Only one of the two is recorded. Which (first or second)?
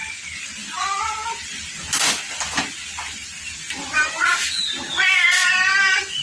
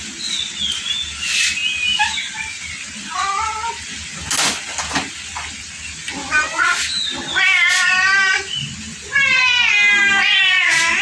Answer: second